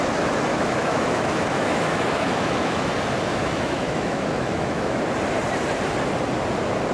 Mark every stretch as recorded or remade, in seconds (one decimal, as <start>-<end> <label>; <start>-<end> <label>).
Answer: 0.0-0.5 recorded; 0.5-2.9 remade; 2.9-3.3 recorded; 3.3-5.0 remade; 5.0-6.9 recorded